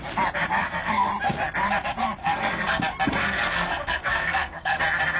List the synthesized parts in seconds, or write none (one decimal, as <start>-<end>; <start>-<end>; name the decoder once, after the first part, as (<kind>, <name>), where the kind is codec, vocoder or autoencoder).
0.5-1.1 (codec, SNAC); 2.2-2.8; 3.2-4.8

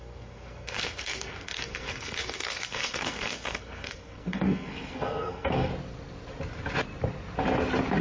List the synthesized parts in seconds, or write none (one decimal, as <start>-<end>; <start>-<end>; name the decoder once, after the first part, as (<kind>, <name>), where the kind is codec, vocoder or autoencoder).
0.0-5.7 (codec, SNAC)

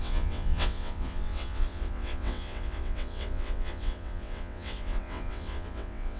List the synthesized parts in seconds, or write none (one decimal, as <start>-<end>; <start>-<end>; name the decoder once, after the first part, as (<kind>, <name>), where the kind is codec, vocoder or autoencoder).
0.0-6.2 (vocoder, WaveNeXt)